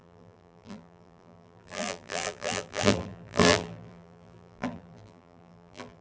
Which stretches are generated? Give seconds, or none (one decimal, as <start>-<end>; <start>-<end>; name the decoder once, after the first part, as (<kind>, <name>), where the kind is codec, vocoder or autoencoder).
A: 0.0-6.0 (vocoder, BigVGAN v2)